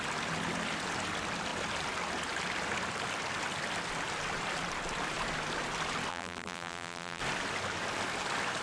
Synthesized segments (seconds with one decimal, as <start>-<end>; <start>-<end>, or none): 6.1-7.2